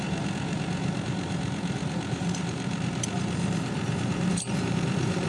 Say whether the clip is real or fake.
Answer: fake